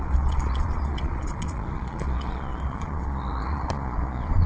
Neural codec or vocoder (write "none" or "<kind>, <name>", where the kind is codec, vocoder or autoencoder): vocoder, Vocos